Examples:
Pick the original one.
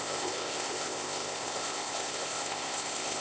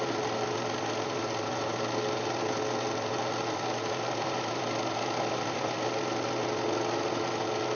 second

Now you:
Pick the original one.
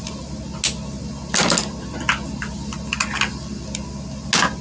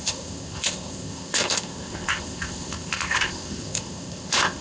first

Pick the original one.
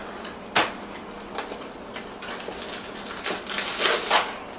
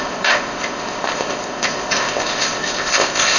first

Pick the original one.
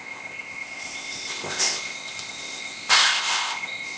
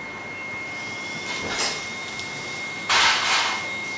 second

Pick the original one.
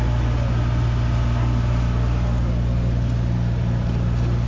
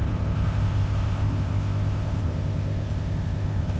first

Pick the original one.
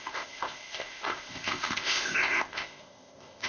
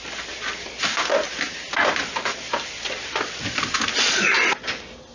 second